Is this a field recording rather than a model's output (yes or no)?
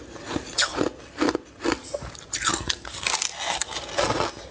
yes